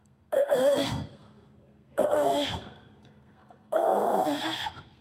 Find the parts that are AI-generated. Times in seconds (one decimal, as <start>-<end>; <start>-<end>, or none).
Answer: 0.0-5.0